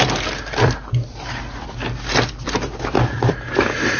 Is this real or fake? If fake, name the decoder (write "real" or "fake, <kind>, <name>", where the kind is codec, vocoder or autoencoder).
fake, vocoder, BigVGAN v2